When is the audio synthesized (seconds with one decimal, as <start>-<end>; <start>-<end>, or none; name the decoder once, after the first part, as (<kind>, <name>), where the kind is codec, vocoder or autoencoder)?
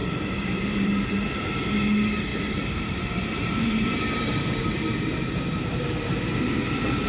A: 0.0-1.7 (vocoder, BigVGAN v2); 2.3-6.4